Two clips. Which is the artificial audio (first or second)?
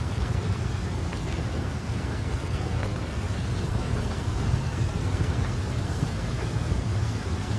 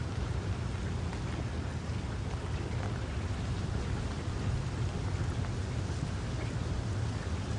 first